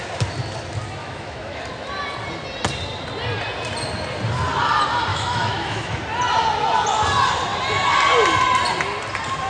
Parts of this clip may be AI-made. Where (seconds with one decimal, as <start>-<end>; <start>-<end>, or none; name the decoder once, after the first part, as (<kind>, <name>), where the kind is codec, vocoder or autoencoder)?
1.0-1.6 (autoencoder, DAC-VAE); 5.1-6.0